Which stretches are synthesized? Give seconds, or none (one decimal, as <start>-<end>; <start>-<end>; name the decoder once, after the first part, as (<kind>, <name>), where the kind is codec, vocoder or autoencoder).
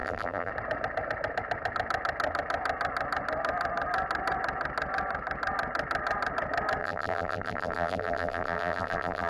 0.0-0.5 (vocoder, BigVGAN v2); 6.8-9.3